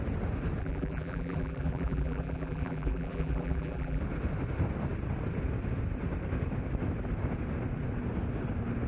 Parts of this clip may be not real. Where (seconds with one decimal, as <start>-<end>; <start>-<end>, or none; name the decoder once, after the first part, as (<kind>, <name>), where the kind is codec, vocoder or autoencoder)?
0.6-4.0 (vocoder, BigVGAN v2)